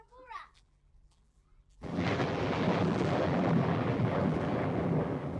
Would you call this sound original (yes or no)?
no